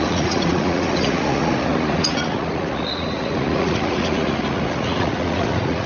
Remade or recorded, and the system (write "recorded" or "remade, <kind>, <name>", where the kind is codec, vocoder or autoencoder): remade, vocoder, Vocos